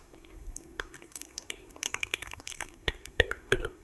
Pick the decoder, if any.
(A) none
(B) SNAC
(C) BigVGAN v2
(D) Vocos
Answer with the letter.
B